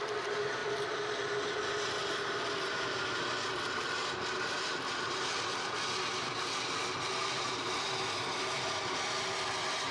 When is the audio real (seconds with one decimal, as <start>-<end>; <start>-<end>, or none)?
0.0-9.9